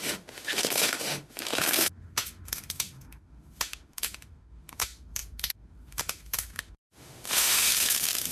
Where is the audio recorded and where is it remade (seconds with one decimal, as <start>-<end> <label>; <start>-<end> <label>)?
0.0-8.3 remade